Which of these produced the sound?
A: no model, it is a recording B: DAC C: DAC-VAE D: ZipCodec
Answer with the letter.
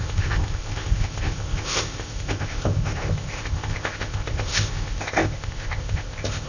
D